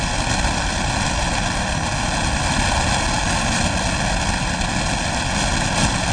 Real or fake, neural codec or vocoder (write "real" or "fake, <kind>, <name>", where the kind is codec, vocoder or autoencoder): real